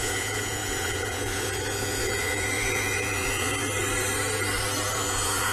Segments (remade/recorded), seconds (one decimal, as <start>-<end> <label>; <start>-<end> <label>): 0.0-3.6 remade; 3.6-4.9 recorded; 4.9-5.5 remade